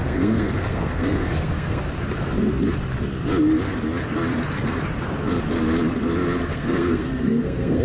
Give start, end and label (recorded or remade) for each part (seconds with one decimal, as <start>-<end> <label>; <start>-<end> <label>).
0.0-1.8 remade; 1.8-6.4 recorded; 6.4-7.8 remade